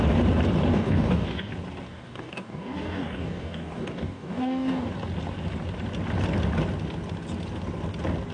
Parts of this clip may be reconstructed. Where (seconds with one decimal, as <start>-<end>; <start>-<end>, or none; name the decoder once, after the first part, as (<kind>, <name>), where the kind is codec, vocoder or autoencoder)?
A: 0.7-1.5 (codec, DAC); 1.9-4.9